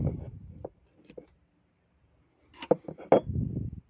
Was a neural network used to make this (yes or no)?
no